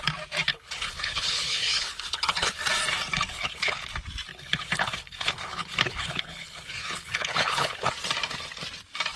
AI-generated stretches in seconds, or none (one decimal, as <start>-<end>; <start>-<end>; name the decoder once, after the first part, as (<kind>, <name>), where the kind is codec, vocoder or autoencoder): 0.5-2.6 (codec, HILCodec); 3.3-3.9; 4.3-7.9